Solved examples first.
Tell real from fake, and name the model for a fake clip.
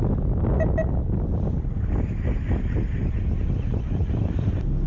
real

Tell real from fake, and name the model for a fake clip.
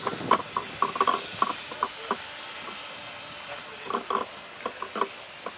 real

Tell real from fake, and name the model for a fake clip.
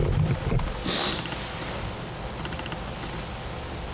real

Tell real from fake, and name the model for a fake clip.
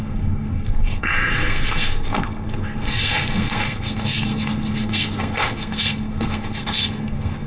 fake, codec, SNAC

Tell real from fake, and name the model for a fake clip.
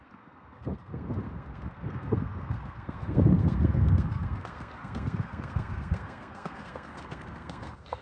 fake, codec, SNAC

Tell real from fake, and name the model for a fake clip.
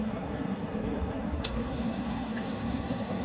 fake, codec, SNAC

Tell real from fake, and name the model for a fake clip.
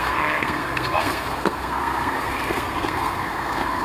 fake, codec, SNAC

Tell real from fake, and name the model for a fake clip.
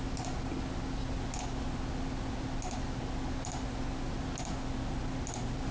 real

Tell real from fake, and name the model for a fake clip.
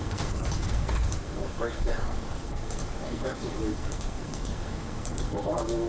fake, codec, SNAC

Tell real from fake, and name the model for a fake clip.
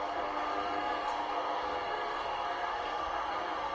fake, codec, SNAC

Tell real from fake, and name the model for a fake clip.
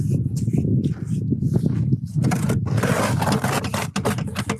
real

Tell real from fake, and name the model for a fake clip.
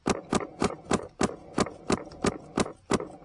real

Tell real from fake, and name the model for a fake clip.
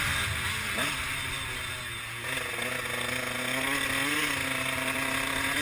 real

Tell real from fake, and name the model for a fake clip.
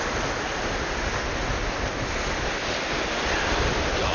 real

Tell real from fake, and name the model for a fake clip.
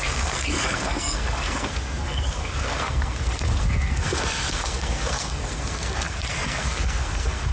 fake, codec, SNAC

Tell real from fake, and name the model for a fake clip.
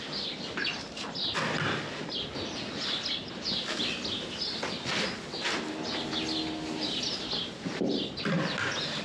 real